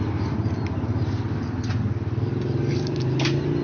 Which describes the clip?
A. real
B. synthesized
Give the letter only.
A